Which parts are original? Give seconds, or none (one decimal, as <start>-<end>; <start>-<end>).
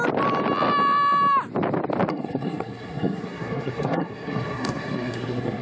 0.0-2.1